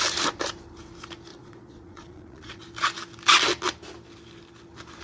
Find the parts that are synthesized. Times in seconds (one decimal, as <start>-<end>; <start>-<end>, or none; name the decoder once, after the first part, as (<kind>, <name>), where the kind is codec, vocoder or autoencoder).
1.3-2.6 (vocoder, Vocos)